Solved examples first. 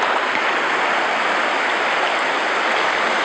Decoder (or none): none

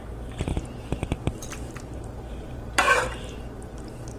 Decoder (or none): vocoder, BigVGAN v2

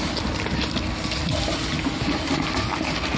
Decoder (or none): none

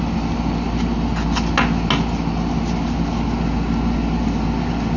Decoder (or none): none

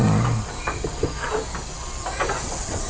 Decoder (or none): none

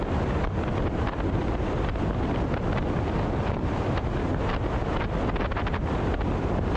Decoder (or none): none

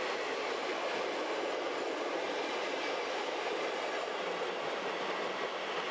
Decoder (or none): none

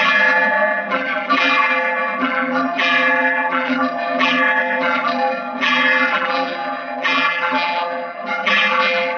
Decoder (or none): vocoder, BigVGAN v2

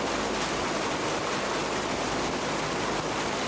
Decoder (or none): none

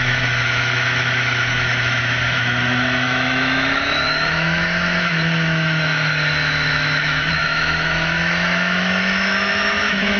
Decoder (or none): autoencoder, DAC-VAE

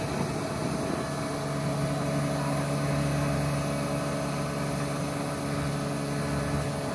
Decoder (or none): none